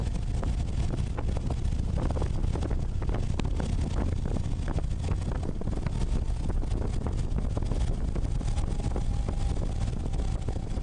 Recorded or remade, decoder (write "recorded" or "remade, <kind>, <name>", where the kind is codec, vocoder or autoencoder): recorded